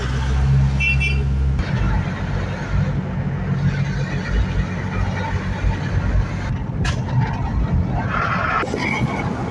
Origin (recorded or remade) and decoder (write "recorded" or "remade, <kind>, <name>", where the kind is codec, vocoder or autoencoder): recorded